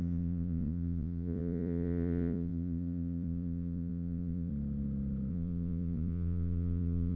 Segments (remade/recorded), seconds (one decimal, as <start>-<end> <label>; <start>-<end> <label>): 0.0-4.5 remade; 4.5-5.3 recorded; 5.3-7.2 remade